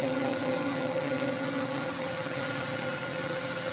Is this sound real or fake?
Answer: fake